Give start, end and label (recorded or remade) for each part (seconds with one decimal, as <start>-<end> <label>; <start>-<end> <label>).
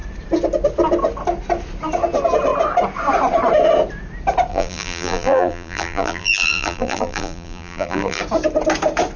0.0-4.5 recorded; 4.5-8.2 remade; 8.2-9.2 recorded